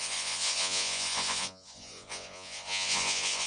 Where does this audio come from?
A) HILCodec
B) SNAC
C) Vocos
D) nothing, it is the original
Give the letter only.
C